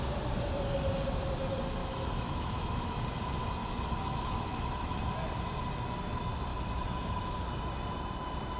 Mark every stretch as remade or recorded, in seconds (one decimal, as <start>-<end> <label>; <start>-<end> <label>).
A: 0.0-1.8 recorded; 1.8-3.0 remade; 3.0-3.6 recorded; 3.6-5.0 remade; 5.0-6.5 recorded; 6.5-7.6 remade; 7.6-8.6 recorded